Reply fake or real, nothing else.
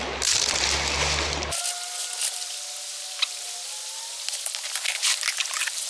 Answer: real